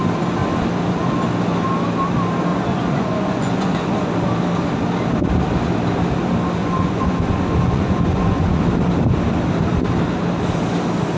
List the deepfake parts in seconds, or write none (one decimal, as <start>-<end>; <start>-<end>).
2.5-4.1; 6.6-8.7